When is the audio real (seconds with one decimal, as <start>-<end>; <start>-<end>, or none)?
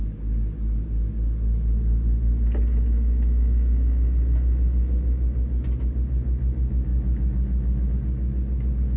0.0-9.0